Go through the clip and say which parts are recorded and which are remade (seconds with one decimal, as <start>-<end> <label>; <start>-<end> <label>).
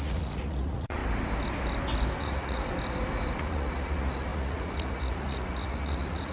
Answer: 0.0-1.0 remade; 1.0-2.2 recorded; 2.2-2.6 remade; 2.6-3.4 recorded; 3.4-6.3 remade